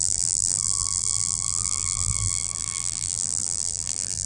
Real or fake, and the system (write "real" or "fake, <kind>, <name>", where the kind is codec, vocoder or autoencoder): fake, vocoder, BigVGAN v2